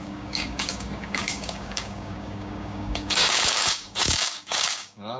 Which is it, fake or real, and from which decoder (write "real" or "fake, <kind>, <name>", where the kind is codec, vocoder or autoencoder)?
fake, codec, DAC